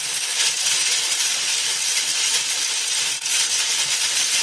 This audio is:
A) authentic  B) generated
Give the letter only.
A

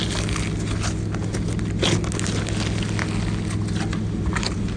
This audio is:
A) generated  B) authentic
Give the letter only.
B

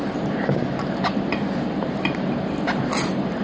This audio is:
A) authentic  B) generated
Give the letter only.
A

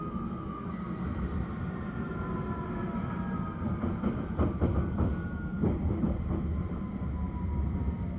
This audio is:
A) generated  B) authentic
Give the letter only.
B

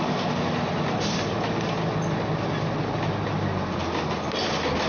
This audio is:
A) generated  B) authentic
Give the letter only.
B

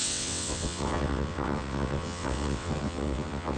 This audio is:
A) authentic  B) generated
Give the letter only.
B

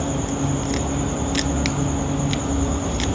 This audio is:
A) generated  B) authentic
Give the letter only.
B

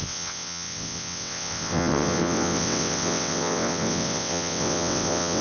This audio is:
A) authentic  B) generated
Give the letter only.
B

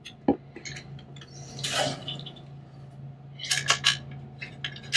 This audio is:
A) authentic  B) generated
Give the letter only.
A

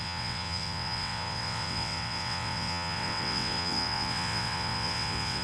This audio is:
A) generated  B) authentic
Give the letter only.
A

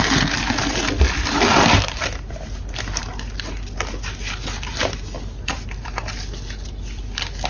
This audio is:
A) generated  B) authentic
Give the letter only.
B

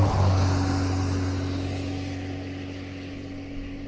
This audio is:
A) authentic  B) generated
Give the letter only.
A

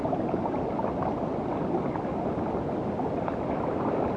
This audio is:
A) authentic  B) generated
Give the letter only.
A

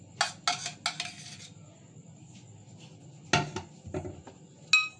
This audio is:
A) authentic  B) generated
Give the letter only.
A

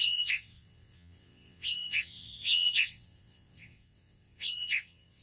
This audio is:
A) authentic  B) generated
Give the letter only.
B